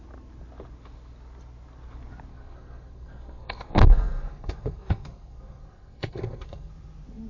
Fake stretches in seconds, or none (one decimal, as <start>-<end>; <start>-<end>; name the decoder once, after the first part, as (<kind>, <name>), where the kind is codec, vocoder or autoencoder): 2.3-6.7 (codec, SNAC)